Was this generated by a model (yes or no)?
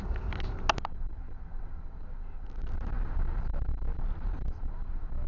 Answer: no